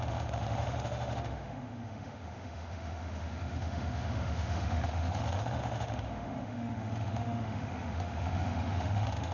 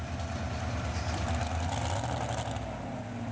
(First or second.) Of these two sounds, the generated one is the first